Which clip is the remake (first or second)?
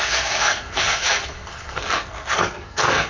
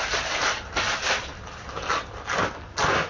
first